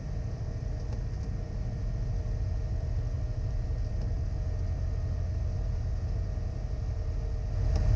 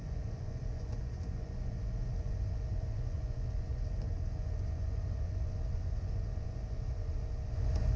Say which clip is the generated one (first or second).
second